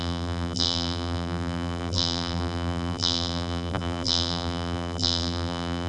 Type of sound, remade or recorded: remade